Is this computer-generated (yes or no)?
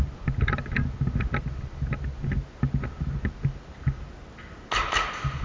no